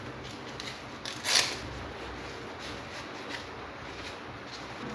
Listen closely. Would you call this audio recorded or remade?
recorded